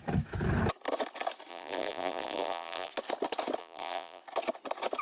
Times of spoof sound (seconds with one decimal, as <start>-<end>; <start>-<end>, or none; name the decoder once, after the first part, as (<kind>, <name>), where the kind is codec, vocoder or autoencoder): 1.5-2.9 (vocoder, BigVGAN v2); 3.6-4.2